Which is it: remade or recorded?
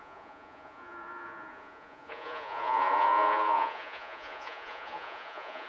remade